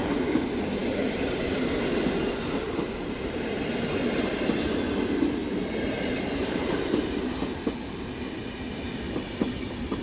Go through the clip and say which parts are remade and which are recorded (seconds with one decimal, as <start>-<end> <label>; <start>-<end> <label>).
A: 0.0-10.0 recorded